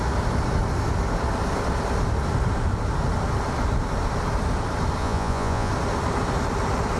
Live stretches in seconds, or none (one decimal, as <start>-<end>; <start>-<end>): 0.0-5.0; 5.7-7.0